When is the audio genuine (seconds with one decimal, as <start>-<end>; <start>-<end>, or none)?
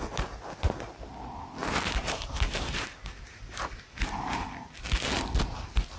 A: 0.0-1.6; 4.4-6.0